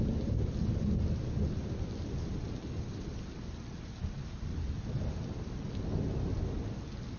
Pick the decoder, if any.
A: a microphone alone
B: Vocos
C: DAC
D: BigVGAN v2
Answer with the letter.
A